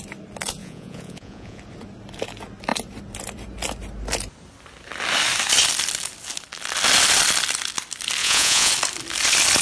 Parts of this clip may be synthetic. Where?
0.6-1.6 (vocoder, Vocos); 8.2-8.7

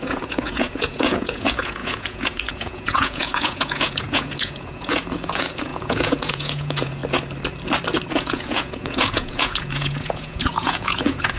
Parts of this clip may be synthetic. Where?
0.0-7.0 (vocoder, Vocos); 8.1-11.4